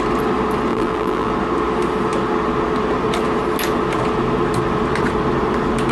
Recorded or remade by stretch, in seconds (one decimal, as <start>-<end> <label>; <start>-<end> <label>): 0.0-0.7 recorded; 0.7-1.3 remade; 1.3-5.9 recorded